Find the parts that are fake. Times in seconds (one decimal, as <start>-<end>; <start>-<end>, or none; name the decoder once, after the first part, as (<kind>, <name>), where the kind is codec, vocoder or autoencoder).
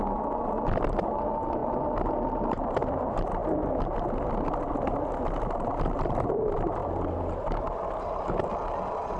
none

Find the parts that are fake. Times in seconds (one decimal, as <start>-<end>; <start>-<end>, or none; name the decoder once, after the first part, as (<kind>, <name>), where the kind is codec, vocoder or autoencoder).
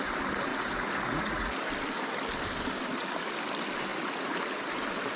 0.5-1.5 (vocoder, Vocos); 3.9-4.4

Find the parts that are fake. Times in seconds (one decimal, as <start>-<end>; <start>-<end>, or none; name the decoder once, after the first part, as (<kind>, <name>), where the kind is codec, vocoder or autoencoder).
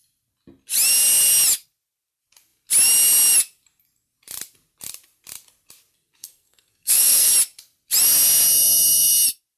6.2-7.3 (codec, SNAC)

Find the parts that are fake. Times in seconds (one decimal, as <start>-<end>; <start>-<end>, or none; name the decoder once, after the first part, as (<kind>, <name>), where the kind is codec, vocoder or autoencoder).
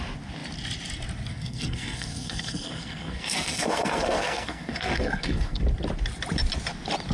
1.3-5.6 (codec, SNAC)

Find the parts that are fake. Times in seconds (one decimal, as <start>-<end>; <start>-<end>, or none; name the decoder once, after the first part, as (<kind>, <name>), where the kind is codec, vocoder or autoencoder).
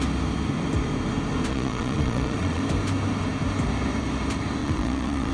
1.5-2.6 (vocoder, Vocos); 4.6-5.3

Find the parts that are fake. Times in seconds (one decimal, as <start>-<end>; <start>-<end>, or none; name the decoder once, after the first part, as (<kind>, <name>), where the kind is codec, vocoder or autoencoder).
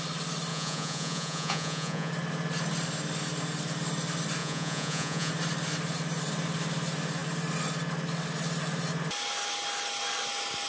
0.5-2.1 (vocoder, Vocos); 4.4-5.3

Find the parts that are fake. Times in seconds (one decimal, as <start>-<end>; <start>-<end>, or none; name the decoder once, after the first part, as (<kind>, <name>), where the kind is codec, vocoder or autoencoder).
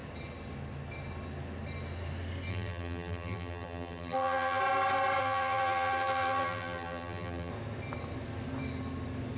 2.5-4.6 (vocoder, BigVGAN v2); 5.2-7.5